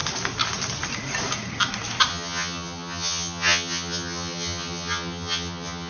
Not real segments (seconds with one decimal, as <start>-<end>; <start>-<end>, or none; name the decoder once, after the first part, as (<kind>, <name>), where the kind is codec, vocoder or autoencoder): 2.1-5.9 (vocoder, HiFi-GAN)